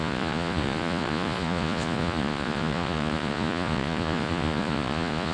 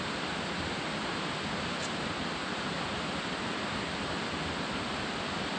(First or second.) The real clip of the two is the second